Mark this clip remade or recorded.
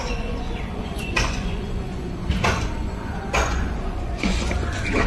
remade